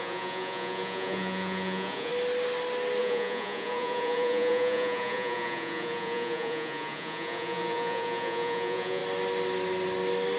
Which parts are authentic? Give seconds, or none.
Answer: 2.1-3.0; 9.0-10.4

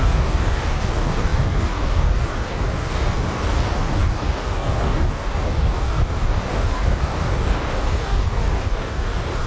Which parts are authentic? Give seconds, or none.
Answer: none

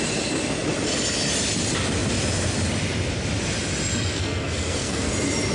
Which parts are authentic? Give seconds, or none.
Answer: 0.0-4.1; 5.1-5.5